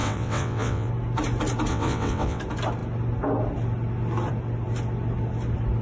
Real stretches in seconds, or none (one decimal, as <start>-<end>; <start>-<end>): 0.9-1.7; 2.4-5.8

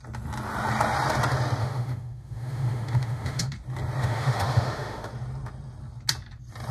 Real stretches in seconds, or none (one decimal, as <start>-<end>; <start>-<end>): 0.0-1.6; 3.5-4.0; 5.1-6.7

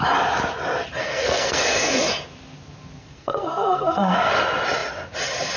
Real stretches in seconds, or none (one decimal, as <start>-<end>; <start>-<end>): 0.0-1.0; 1.9-3.0; 4.3-5.6

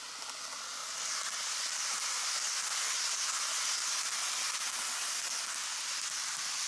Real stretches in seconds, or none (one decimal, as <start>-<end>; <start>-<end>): 0.0-6.7

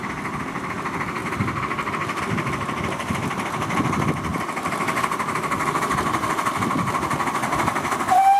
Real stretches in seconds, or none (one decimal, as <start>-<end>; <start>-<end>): 0.0-1.2; 2.2-4.3; 5.8-8.4

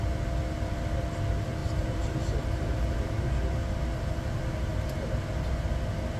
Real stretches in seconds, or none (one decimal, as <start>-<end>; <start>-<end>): 0.0-1.6; 3.2-6.2

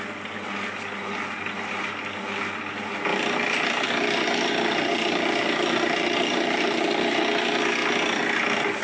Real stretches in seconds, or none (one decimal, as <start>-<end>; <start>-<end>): 0.0-3.1; 7.1-8.8